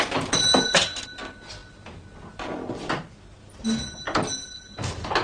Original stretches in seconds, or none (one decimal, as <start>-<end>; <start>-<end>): 0.0-5.2

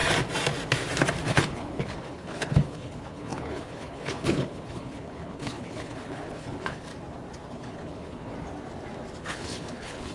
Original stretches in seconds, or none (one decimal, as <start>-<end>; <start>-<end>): 0.0-1.3; 6.9-7.5; 8.3-9.2

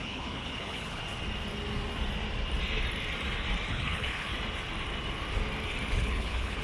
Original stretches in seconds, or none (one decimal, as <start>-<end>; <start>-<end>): 1.0-3.7; 4.3-5.9

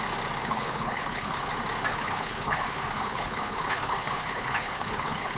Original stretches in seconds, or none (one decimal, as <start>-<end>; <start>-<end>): 0.0-0.4; 1.5-1.9

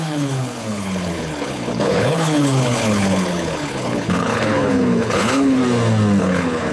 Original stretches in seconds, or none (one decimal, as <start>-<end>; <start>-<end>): 5.6-6.2

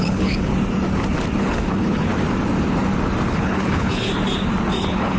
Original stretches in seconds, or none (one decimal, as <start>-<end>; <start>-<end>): 0.5-1.4; 2.1-3.3; 4.1-4.8

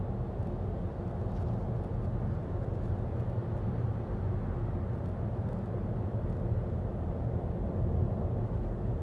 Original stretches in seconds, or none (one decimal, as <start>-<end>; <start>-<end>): 0.0-9.0

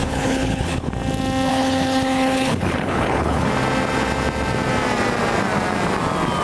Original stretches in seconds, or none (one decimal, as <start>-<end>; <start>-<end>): 0.9-1.5; 3.5-6.4